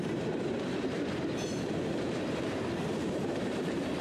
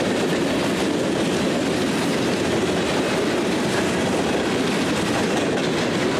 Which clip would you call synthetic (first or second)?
first